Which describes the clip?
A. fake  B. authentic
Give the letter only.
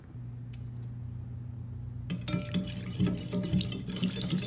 B